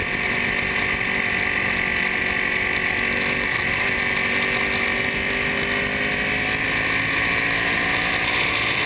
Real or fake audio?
real